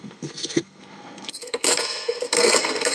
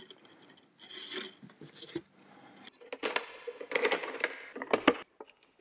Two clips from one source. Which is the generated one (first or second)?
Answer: first